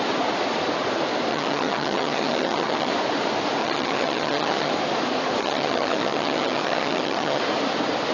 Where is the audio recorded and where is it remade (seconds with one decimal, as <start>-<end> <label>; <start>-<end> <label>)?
0.0-1.3 recorded; 1.3-2.9 remade; 2.9-3.6 recorded; 3.6-4.7 remade; 4.7-5.4 recorded; 5.4-7.4 remade; 7.4-8.1 recorded